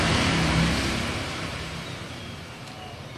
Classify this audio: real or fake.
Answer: real